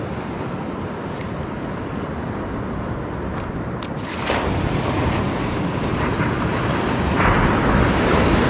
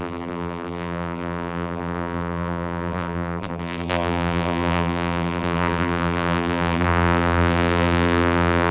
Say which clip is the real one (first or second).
first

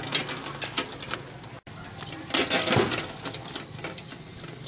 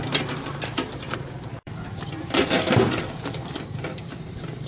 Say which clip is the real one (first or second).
first